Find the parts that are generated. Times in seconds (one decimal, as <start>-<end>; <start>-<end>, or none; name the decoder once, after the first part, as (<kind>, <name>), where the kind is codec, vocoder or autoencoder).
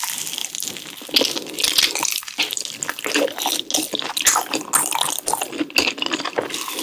none